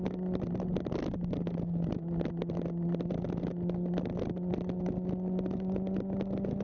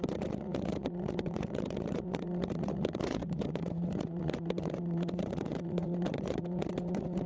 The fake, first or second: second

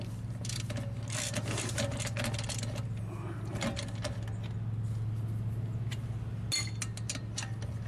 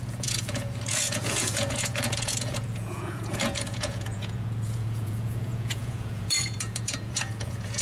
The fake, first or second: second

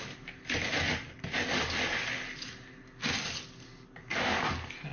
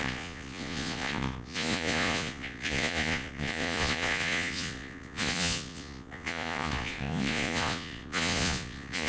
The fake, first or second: second